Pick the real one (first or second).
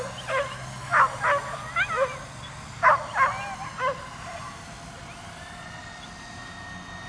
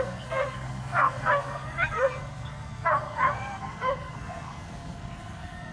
first